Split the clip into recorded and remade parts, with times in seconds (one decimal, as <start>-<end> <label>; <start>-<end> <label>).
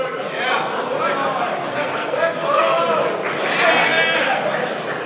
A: 0.0-1.7 recorded; 1.7-2.8 remade; 2.8-3.8 recorded; 3.8-4.4 remade; 4.4-5.1 recorded